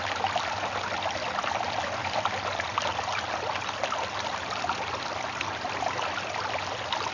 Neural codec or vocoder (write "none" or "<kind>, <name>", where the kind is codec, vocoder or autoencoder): none